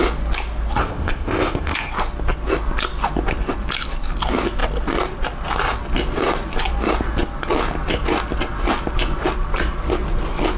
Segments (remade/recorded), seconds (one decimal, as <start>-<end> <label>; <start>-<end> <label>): 0.0-0.8 recorded; 0.8-1.9 remade; 1.9-10.6 recorded